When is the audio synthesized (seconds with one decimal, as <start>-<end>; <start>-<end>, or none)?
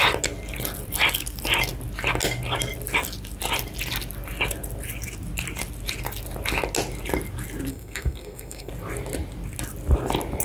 7.7-8.7